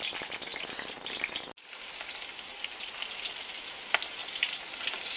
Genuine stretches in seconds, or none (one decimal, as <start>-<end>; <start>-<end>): 0.0-5.2